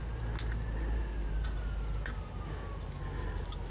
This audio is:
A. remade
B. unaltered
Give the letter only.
B